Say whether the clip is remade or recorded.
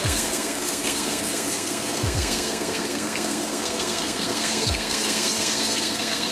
remade